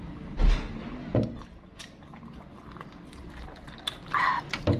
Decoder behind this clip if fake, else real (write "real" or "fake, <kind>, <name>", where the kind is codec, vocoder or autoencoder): real